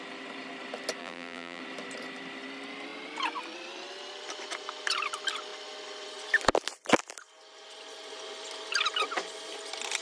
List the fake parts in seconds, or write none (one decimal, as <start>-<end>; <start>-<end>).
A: 1.0-1.6